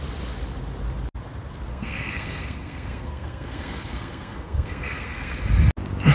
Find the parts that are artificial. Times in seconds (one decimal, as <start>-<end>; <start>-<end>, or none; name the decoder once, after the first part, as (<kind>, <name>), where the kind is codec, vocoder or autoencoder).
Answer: 1.7-5.4 (codec, SNAC)